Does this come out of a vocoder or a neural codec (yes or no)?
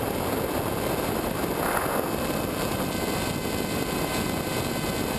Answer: no